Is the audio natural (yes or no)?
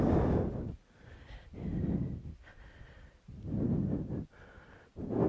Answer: yes